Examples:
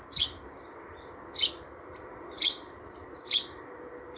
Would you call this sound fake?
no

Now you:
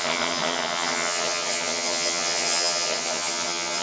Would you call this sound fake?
yes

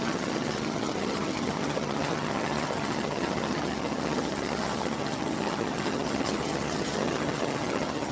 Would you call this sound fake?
yes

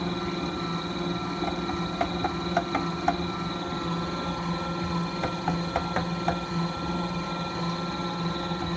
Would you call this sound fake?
no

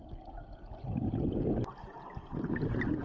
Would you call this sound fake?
no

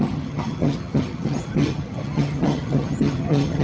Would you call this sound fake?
yes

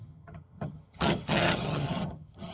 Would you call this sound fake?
yes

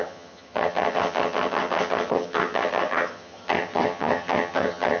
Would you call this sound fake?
yes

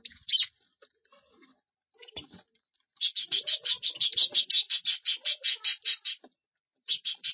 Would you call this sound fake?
no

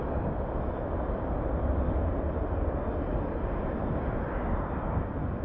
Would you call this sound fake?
no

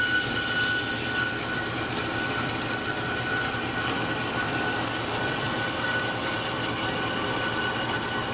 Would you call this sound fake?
no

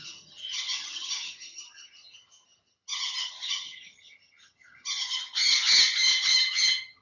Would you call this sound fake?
yes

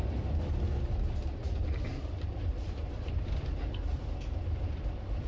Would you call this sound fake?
no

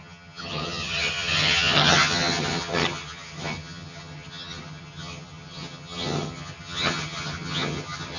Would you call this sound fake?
yes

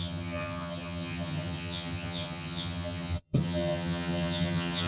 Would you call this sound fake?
yes